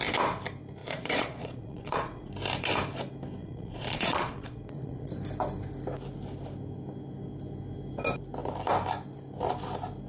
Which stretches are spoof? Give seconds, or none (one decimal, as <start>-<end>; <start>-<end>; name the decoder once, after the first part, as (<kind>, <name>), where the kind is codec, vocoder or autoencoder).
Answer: 0.8-2.3 (vocoder, Vocos); 3.4-5.1